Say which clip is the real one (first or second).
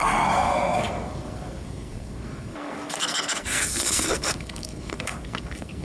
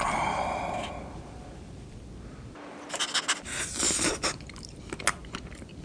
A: second